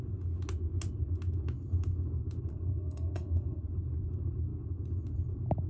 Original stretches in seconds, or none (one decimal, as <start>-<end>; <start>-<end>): 0.0-2.5; 3.6-5.7